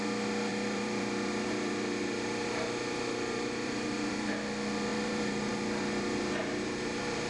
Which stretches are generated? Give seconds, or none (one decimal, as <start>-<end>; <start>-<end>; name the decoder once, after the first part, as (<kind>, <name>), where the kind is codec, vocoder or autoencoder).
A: 0.5-4.3 (vocoder, BigVGAN v2); 4.9-7.3